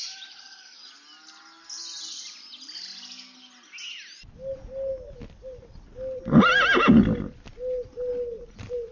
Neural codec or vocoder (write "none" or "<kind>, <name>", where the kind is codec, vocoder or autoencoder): none